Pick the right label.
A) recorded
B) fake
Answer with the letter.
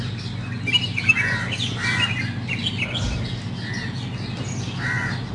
A